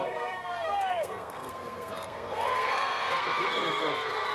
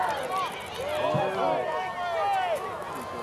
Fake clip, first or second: first